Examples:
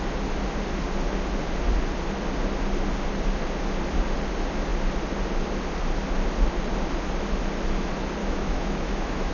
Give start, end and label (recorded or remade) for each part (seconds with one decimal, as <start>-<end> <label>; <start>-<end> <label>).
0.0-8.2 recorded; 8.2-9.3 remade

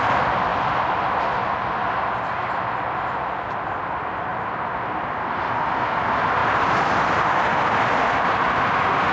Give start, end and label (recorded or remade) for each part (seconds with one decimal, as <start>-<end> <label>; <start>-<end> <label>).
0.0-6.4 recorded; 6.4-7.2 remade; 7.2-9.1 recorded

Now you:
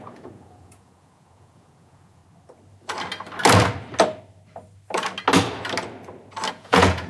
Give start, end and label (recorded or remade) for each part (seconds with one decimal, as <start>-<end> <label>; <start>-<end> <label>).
0.0-2.2 remade; 2.2-6.5 recorded; 6.5-7.1 remade